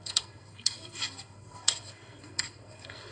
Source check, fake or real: fake